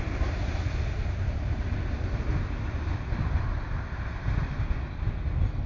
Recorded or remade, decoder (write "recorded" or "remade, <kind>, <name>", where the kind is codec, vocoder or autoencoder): recorded